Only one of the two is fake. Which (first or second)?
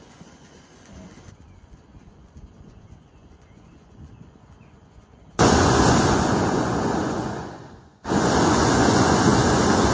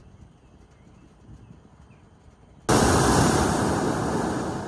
first